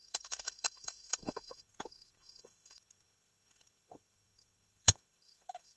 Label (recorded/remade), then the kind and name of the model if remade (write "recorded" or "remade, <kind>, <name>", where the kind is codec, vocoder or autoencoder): remade, autoencoder, DAC-VAE